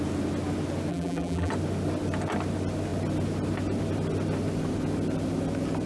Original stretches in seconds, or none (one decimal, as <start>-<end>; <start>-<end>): 0.0-0.9; 1.5-5.9